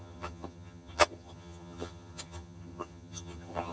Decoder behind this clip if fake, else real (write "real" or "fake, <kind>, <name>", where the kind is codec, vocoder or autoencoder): fake, vocoder, HiFi-GAN